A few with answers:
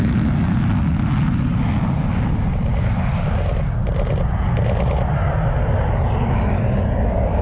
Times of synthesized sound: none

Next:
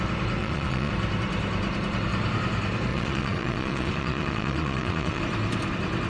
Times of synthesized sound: 0.4-0.9 (vocoder, Vocos); 2.9-5.2

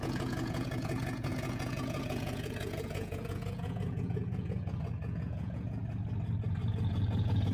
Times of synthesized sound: 0.0-5.8 (vocoder, Vocos); 6.7-7.5

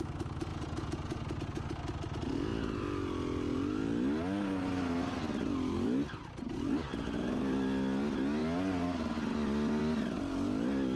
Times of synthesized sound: 0.5-1.7 (vocoder, Vocos)